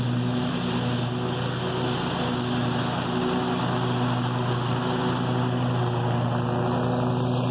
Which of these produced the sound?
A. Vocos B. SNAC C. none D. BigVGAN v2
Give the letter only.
C